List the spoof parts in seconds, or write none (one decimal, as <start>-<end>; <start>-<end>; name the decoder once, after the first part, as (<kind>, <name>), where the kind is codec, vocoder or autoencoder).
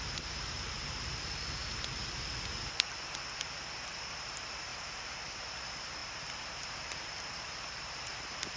0.0-1.6 (vocoder, BigVGAN v2); 4.1-6.0; 6.7-8.6